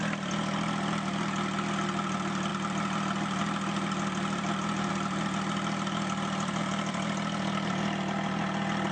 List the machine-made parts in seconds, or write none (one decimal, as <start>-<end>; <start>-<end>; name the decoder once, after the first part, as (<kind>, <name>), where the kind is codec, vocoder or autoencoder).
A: none